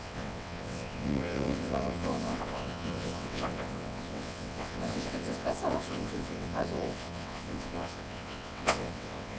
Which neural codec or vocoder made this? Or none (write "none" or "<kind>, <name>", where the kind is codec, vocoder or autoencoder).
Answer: vocoder, WaveNeXt